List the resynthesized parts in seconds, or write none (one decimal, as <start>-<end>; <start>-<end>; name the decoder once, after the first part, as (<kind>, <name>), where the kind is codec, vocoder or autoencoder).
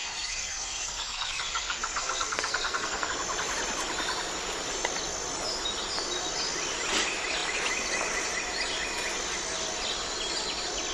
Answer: 0.0-3.1 (codec, SNAC)